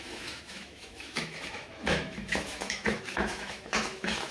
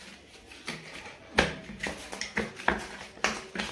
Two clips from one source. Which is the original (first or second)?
second